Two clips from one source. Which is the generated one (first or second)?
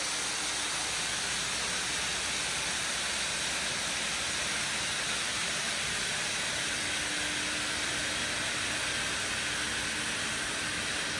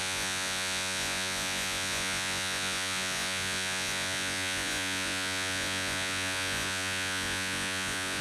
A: second